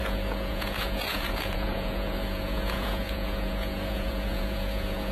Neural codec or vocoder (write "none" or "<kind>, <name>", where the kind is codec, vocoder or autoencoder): vocoder, Vocos